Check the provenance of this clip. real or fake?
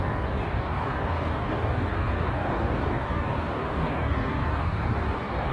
fake